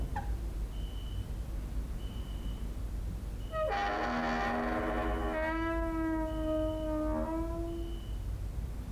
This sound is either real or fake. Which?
real